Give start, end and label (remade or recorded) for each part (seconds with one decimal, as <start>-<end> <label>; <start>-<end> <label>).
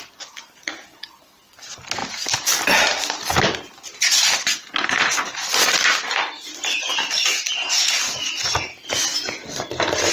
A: 0.0-9.4 recorded; 9.4-10.1 remade